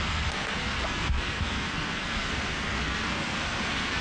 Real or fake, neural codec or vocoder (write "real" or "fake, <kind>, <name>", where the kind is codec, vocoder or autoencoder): fake, codec, SNAC